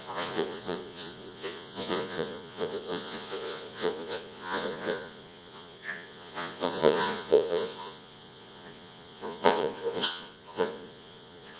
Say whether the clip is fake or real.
fake